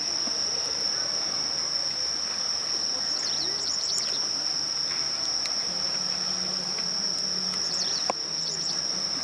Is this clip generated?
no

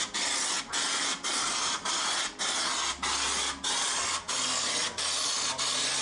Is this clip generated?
no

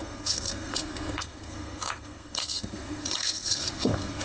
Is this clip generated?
yes